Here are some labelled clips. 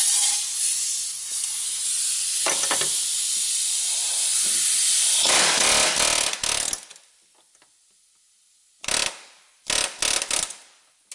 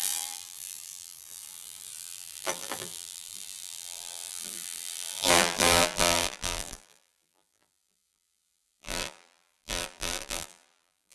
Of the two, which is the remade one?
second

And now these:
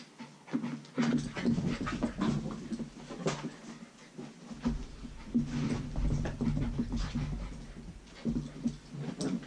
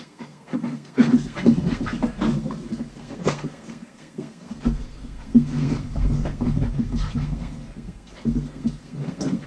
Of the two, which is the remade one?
second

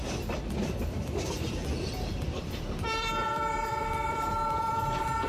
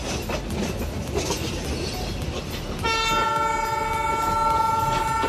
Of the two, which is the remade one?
first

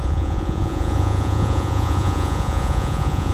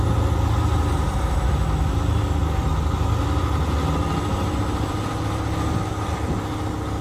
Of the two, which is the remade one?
first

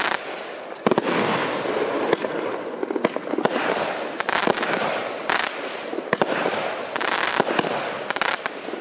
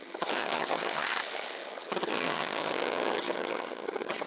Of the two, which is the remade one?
second